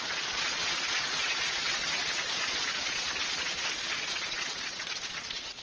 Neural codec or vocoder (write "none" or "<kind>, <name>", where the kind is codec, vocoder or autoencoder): vocoder, Vocos